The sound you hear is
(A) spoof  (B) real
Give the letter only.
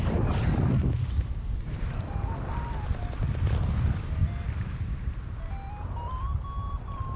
B